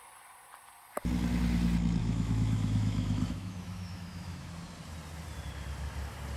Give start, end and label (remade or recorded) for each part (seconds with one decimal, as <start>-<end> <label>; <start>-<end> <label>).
0.0-2.0 recorded; 2.0-4.5 remade; 4.5-6.4 recorded